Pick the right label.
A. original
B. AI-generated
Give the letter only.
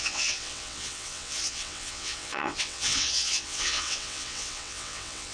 B